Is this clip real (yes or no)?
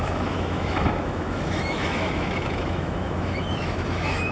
no